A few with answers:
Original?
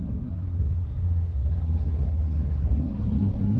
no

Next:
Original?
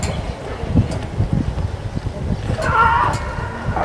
yes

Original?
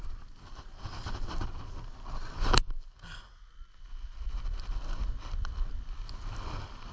yes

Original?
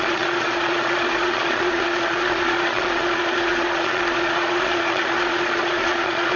no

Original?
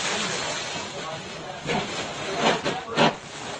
yes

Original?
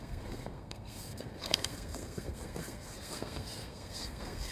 no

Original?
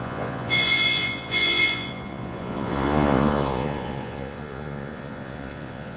no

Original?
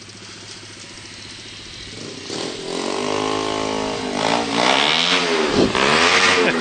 yes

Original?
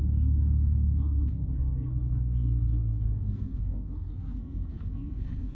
no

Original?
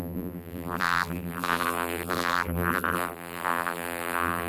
no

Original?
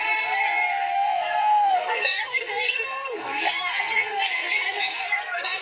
no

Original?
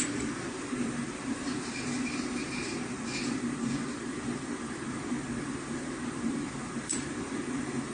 no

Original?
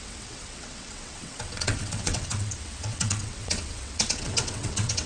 no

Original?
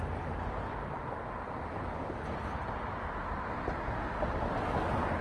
yes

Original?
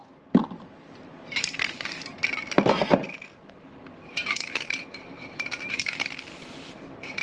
no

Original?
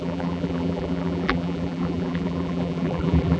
no